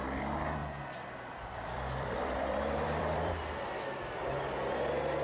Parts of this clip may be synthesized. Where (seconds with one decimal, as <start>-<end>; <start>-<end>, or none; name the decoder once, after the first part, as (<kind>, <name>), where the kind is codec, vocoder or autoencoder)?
0.6-3.3 (vocoder, BigVGAN v2)